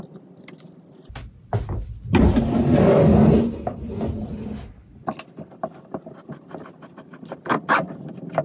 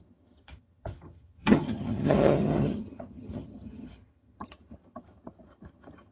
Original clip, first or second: first